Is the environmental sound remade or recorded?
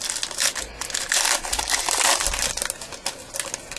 recorded